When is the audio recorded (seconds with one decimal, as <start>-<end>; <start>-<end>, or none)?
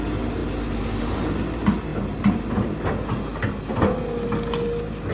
0.0-5.1